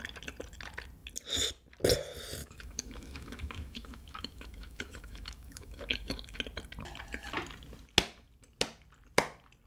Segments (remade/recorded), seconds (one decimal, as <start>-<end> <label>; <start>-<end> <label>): 0.0-2.4 recorded; 2.4-6.4 remade; 6.4-9.7 recorded